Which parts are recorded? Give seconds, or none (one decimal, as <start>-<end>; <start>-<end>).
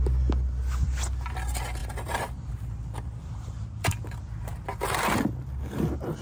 0.0-1.8; 4.6-6.2